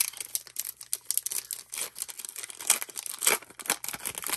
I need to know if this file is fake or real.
real